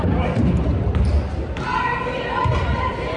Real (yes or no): no